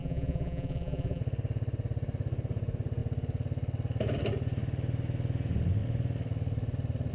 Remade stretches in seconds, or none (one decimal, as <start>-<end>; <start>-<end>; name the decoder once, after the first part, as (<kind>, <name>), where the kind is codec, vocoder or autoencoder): 0.0-1.2 (vocoder, BigVGAN v2)